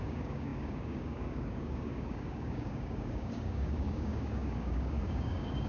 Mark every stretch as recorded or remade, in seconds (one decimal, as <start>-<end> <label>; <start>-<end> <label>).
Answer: 0.0-5.7 remade